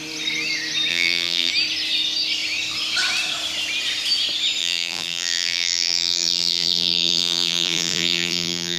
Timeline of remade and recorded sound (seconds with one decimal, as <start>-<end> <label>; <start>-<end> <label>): 0.0-0.9 recorded; 0.9-1.5 remade; 1.5-4.6 recorded; 4.6-8.8 remade